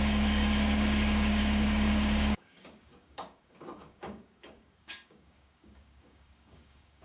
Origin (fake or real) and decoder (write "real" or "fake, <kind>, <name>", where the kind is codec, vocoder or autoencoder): fake, codec, DAC